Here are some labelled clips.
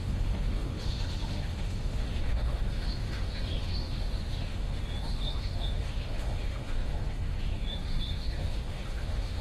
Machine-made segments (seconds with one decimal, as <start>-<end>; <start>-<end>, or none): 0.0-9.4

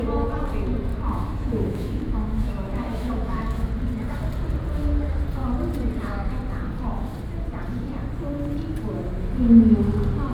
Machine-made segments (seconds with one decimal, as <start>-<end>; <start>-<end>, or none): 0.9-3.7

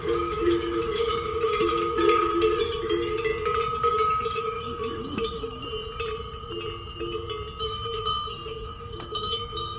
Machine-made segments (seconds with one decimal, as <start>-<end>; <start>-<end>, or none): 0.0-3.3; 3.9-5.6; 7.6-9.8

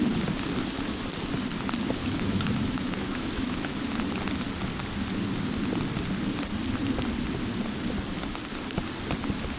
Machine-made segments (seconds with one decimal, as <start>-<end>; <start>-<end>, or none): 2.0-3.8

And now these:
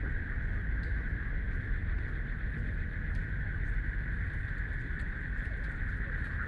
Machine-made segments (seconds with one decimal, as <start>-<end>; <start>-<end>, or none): none